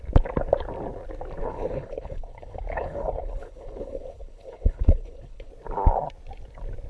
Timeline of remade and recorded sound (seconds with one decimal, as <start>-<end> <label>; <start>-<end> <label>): 0.0-1.4 recorded; 1.4-5.5 remade; 5.5-6.9 recorded